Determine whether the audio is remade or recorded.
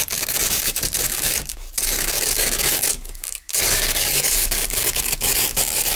remade